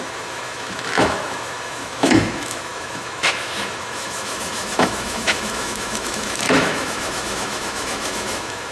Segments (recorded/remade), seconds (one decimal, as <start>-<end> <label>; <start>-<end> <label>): 0.0-8.7 remade